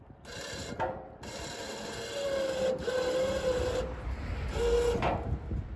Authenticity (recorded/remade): recorded